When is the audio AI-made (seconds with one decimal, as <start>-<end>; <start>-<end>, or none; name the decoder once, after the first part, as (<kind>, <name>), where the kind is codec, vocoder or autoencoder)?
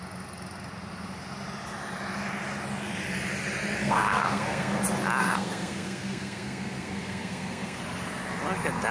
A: 3.8-4.8 (codec, SNAC); 5.2-7.8